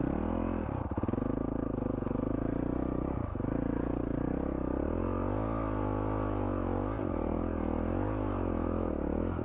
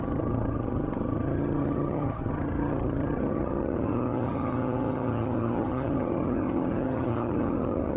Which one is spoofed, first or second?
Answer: second